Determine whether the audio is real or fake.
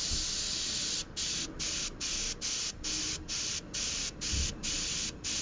real